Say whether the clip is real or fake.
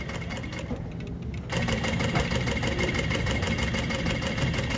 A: real